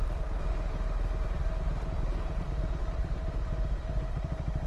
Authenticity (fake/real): fake